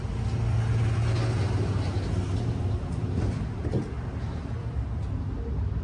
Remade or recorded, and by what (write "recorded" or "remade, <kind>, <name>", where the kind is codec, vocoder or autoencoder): recorded